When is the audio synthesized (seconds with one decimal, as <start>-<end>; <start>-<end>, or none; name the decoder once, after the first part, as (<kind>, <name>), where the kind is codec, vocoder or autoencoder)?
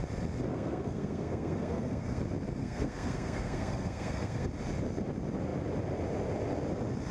0.5-2.2 (codec, SNAC); 2.6-4.5